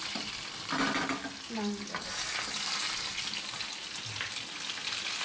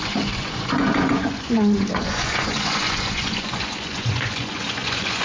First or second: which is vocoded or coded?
second